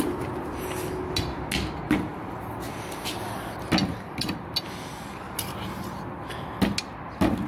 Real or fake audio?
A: real